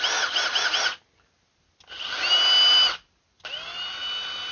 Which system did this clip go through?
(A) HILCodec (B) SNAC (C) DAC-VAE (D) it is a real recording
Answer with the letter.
D